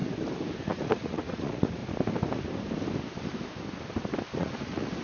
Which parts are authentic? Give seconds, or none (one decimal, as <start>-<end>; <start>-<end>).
0.0-0.6; 1.8-4.4